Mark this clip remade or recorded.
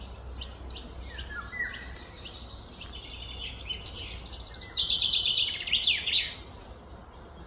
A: recorded